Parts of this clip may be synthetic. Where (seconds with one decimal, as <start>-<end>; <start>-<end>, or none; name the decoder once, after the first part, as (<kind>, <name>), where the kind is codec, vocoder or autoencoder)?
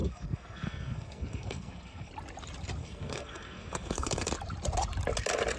0.0-2.1 (codec, SNAC); 2.8-4.3